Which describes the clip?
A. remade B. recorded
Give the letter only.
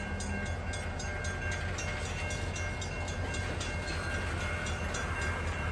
B